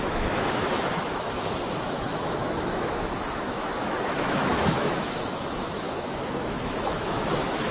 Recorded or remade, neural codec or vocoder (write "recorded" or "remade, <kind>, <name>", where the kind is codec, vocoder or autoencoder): remade, autoencoder, DAC-VAE